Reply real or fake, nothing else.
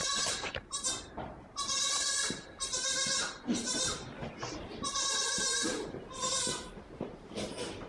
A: fake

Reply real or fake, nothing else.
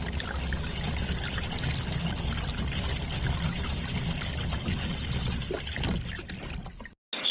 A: real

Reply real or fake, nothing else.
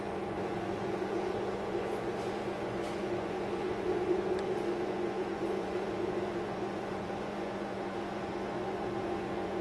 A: fake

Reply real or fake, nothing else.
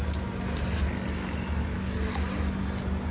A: real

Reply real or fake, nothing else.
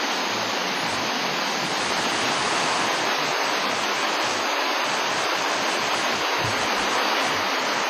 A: real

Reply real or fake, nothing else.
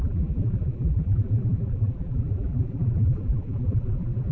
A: fake